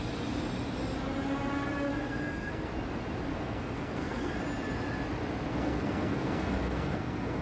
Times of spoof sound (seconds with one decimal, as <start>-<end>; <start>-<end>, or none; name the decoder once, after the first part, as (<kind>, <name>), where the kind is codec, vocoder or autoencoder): 1.9-2.7 (codec, SNAC); 3.3-4.4; 5.5-7.4